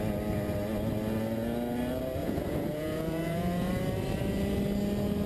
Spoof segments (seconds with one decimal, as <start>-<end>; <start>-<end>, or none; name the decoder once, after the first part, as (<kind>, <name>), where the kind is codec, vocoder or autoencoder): 2.2-3.7 (vocoder, Vocos)